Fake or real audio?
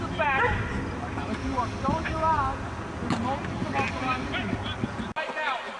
real